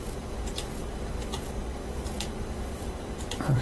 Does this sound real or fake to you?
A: real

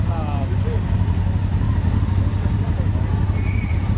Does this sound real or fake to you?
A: real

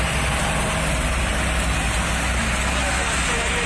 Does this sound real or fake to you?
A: real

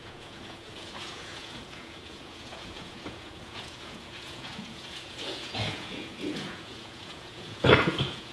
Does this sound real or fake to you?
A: fake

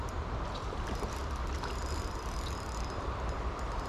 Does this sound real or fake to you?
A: real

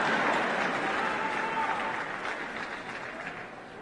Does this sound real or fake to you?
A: real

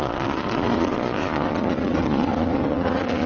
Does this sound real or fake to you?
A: fake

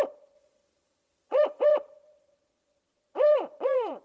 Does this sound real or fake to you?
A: fake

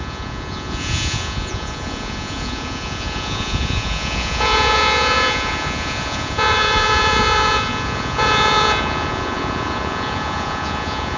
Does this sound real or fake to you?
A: fake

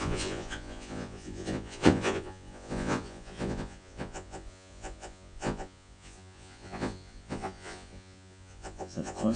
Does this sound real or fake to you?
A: fake